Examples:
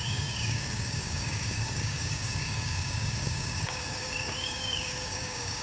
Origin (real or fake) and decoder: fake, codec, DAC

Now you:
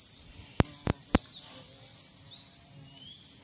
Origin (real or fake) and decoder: real